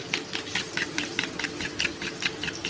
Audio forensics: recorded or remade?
recorded